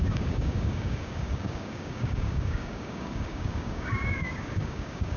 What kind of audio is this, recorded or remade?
remade